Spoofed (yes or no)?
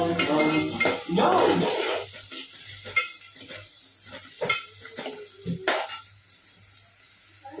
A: no